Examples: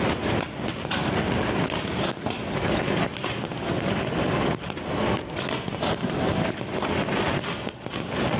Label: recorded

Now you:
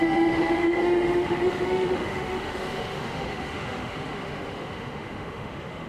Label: remade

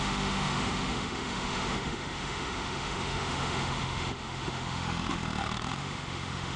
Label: remade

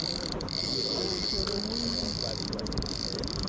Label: recorded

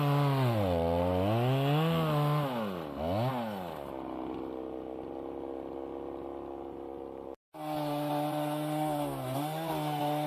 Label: recorded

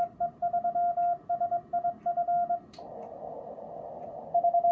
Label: recorded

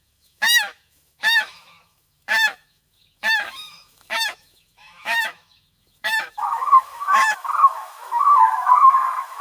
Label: remade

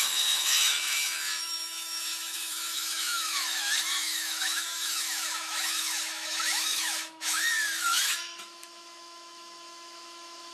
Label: remade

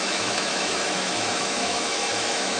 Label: remade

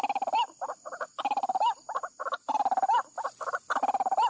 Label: recorded